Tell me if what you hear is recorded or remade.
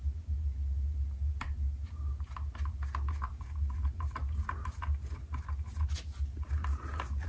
recorded